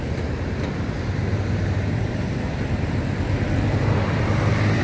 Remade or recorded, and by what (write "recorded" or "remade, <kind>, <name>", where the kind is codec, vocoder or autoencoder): remade, vocoder, BigVGAN v2